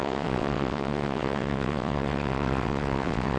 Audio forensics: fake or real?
fake